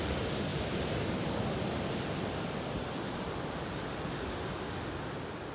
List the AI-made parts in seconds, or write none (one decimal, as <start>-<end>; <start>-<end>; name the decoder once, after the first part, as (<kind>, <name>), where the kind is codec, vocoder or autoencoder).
none